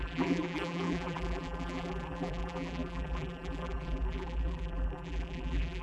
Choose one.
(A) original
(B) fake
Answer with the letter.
B